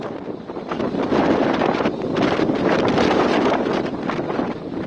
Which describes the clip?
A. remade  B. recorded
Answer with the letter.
B